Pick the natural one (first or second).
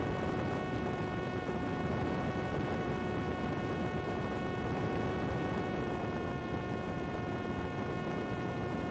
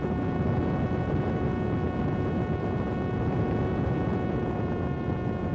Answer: second